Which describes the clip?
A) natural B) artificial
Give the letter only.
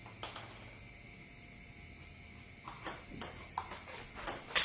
A